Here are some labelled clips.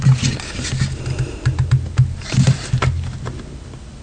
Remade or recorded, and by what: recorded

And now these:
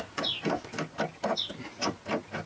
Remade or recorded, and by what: recorded